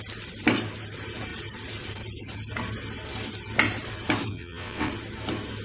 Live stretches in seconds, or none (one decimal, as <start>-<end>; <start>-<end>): 0.0-4.3; 4.9-5.6